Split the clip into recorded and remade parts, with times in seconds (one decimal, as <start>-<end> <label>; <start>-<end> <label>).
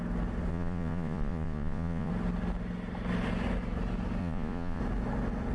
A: 0.0-0.5 recorded; 0.5-2.1 remade; 2.1-4.2 recorded; 4.2-4.8 remade; 4.8-5.5 recorded